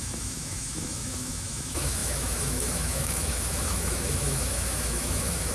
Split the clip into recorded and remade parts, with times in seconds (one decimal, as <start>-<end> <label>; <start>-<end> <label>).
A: 0.0-5.5 remade